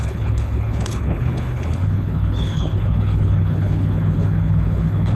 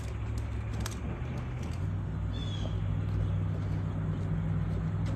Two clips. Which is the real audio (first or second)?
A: second